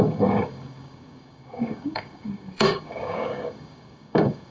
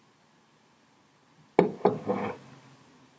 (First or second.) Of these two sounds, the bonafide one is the second